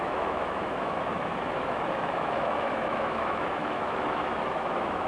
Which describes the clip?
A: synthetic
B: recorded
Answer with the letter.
A